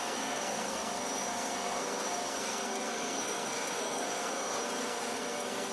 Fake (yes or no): yes